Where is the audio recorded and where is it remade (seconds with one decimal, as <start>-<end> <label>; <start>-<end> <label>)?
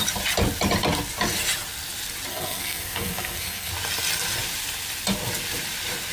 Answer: 0.0-2.3 recorded; 2.3-3.7 remade; 3.7-6.1 recorded